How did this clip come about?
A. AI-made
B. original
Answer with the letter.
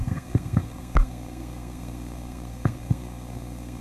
A